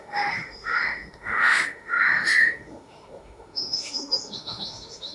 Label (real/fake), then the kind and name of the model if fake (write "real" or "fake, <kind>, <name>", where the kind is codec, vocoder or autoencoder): fake, autoencoder, DAC-VAE